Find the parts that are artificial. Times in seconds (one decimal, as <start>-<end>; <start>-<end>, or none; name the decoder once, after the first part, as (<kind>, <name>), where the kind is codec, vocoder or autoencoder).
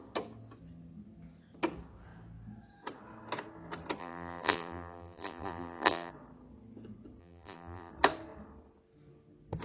4.0-6.1 (vocoder, BigVGAN v2); 7.2-7.9